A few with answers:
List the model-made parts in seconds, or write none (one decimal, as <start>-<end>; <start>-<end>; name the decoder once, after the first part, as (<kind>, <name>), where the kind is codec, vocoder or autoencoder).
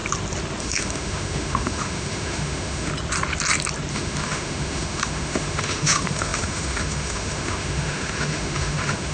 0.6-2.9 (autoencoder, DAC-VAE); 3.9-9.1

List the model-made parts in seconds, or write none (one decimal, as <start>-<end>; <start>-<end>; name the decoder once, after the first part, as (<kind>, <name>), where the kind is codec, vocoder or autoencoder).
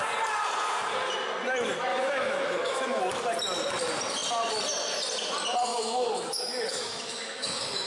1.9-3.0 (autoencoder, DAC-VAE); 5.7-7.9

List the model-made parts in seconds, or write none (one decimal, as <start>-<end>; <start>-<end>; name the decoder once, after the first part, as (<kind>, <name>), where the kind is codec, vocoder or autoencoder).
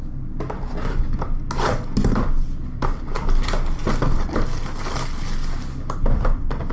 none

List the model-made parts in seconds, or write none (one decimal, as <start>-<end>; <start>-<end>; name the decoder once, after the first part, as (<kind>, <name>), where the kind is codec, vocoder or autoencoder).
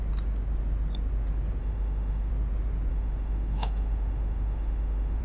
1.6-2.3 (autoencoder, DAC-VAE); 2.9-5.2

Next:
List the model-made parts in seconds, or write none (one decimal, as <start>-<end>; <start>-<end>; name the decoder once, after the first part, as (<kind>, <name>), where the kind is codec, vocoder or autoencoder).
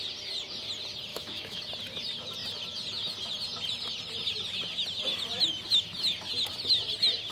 1.1-1.6 (autoencoder, DAC-VAE)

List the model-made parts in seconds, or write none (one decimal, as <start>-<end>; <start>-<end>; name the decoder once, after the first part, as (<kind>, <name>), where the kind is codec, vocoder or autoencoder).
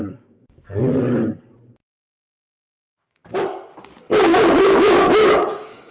0.0-0.8 (autoencoder, DAC-VAE); 2.7-3.2; 4.6-5.9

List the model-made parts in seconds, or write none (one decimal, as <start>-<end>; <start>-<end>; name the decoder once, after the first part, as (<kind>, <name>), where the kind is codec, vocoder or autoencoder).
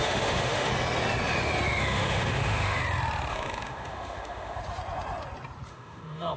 0.0-0.7 (autoencoder, DAC-VAE); 1.8-2.8; 3.3-4.6; 5.7-6.4